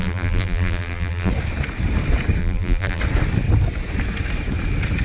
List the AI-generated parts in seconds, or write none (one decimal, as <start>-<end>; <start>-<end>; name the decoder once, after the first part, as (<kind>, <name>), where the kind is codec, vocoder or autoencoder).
0.0-1.3 (vocoder, BigVGAN v2); 2.4-3.0

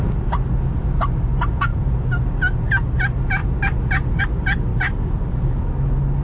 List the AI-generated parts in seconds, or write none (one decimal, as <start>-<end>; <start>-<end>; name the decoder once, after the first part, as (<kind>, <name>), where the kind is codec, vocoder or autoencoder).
1.7-2.2 (vocoder, BigVGAN v2); 4.7-5.4

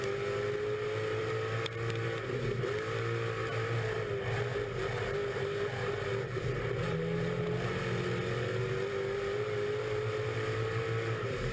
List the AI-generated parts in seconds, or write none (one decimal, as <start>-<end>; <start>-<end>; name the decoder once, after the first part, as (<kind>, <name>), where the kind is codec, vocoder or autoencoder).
none

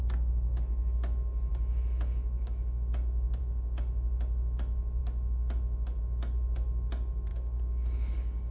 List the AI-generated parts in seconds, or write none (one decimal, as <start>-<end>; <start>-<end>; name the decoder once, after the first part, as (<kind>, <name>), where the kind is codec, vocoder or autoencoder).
7.3-8.5 (codec, DAC)

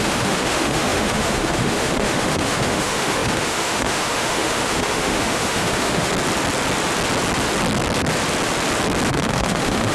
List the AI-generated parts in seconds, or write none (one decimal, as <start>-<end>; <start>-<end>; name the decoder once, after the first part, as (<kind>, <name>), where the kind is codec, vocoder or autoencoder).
0.0-6.1 (autoencoder, DAC-VAE); 9.1-9.9

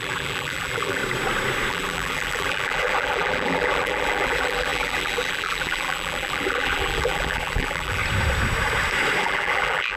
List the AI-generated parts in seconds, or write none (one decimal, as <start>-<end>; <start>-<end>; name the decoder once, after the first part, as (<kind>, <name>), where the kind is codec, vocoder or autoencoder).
0.0-1.0 (vocoder, BigVGAN v2); 1.7-8.0; 9.2-10.0